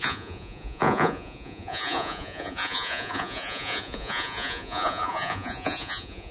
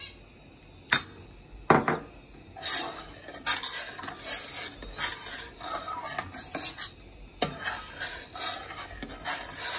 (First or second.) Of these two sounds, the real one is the second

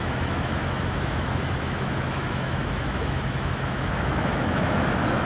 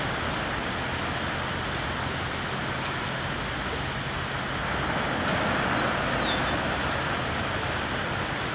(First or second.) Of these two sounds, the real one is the second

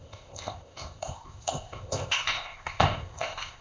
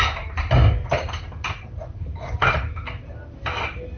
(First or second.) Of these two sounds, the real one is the second